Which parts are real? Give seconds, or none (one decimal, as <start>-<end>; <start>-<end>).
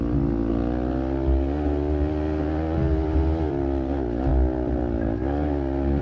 0.0-6.0